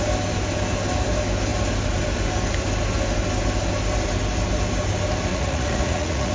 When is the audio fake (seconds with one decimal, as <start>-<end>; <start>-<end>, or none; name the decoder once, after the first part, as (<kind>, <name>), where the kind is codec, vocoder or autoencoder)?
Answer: 5.3-6.3 (vocoder, Vocos)